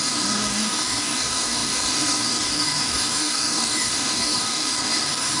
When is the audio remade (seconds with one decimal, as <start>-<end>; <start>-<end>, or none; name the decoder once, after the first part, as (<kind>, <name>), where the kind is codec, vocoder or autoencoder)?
0.0-5.4 (codec, DAC)